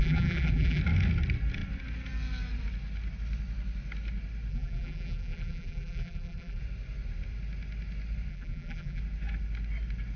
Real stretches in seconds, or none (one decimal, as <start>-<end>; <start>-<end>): 0.8-4.5; 6.6-8.3; 9.0-10.2